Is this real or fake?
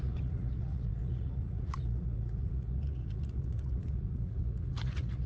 fake